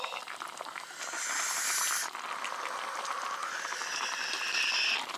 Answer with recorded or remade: recorded